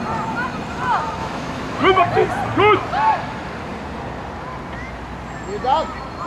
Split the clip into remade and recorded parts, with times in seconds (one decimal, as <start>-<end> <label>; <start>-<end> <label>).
0.0-1.2 recorded; 1.2-2.0 remade; 2.0-6.3 recorded